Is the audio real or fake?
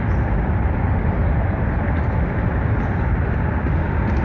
fake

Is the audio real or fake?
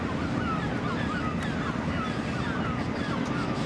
real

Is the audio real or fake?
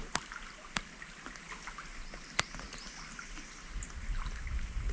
real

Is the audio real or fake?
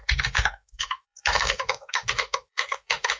fake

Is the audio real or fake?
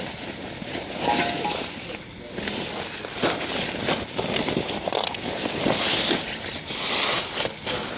real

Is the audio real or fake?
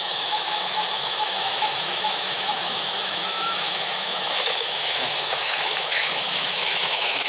fake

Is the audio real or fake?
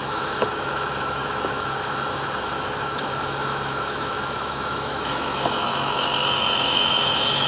fake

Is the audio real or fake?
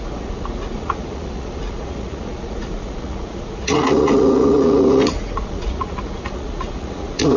fake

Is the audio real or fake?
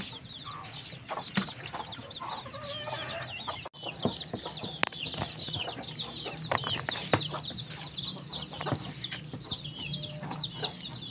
real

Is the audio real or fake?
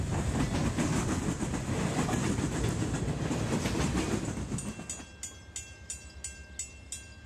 real